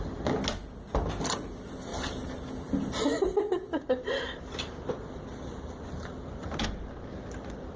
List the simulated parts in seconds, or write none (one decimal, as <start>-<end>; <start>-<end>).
none